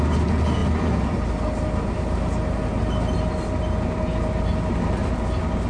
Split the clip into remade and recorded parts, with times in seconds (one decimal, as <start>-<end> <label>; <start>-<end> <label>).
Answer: 0.0-5.7 recorded